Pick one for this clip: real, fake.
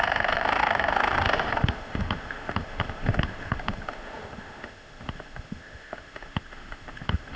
fake